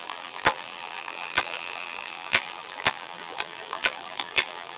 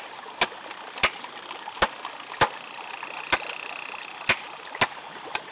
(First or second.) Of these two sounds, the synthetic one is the first